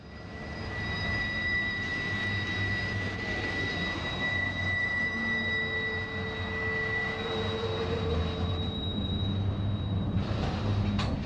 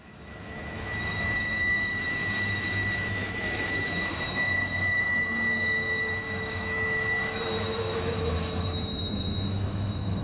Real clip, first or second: first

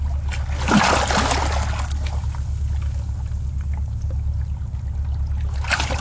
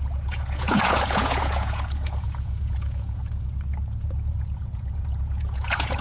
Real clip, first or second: first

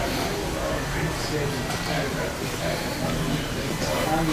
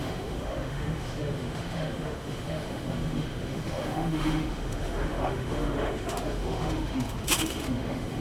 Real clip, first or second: first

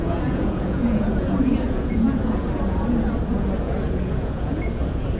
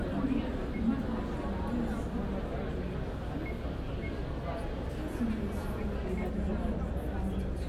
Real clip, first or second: second